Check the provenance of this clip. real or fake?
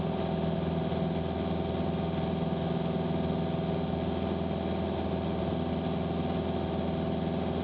real